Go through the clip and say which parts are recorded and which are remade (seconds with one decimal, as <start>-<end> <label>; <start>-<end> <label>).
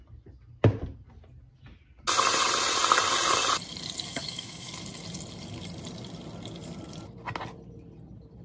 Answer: 0.0-4.1 recorded; 4.1-4.7 remade; 4.7-8.4 recorded